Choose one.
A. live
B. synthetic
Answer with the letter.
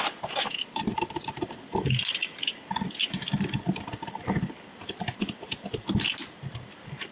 A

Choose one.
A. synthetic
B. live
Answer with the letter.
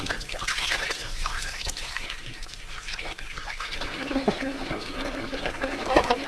A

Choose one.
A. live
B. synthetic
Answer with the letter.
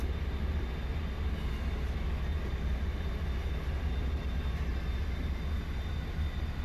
A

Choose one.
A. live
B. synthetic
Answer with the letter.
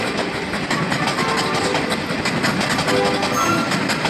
A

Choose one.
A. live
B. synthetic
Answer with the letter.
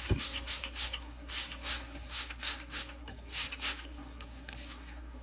B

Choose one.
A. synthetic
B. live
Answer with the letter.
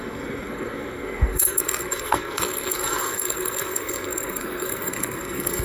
A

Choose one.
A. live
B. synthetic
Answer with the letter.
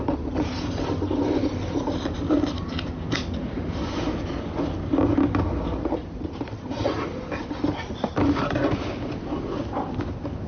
A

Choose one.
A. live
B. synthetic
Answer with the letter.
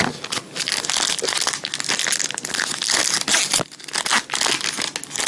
A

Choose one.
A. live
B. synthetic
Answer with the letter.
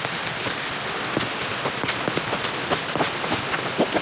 A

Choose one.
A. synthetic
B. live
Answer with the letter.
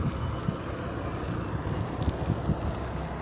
B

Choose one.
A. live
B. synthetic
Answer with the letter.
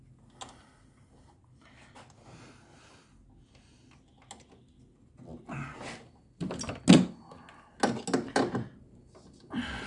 A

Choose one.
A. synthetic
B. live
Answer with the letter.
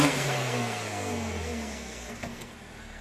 A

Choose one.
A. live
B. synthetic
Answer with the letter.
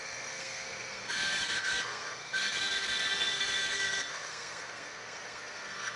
B